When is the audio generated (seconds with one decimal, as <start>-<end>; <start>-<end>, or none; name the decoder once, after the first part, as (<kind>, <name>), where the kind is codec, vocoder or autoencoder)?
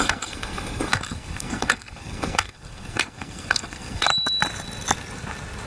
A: 0.0-4.1 (codec, SNAC)